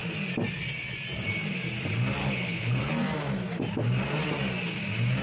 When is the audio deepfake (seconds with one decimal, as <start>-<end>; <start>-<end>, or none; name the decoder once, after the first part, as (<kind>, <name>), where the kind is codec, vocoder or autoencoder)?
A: 2.2-2.9 (codec, HILCodec)